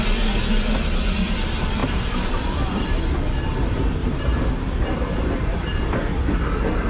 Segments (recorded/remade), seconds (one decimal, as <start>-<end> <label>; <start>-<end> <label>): 0.0-1.8 recorded; 1.8-3.0 remade; 3.0-4.0 recorded; 4.0-5.9 remade; 5.9-6.9 recorded